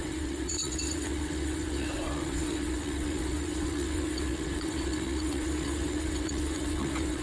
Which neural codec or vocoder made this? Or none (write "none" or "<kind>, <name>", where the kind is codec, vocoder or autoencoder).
vocoder, WaveNeXt